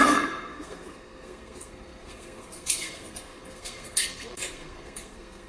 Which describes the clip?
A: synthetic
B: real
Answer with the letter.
A